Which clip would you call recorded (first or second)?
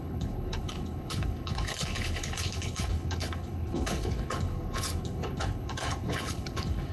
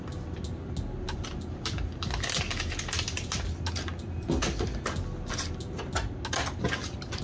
second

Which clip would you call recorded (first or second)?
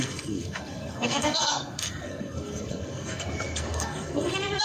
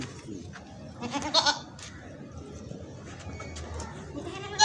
second